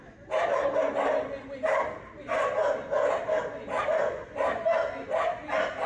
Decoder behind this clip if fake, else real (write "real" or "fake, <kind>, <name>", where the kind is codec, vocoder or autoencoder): real